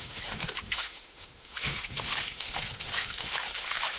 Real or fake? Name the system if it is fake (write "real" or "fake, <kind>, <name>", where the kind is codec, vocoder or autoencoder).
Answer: fake, autoencoder, DAC-VAE